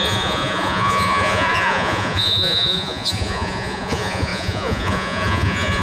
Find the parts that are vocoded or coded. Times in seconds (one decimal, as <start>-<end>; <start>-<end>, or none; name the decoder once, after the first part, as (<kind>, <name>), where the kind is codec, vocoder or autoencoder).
0.0-5.8 (vocoder, Vocos)